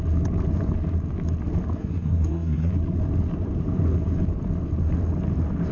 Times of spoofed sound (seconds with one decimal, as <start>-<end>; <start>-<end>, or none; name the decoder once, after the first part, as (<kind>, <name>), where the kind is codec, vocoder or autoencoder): 1.8-2.7 (codec, SNAC)